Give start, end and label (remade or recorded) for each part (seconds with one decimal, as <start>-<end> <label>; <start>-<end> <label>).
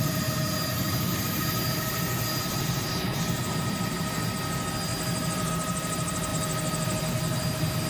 0.0-1.1 recorded; 1.1-4.3 remade; 4.3-4.9 recorded; 4.9-5.5 remade; 5.5-7.9 recorded